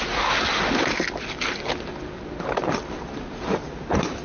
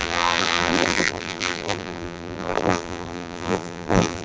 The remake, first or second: second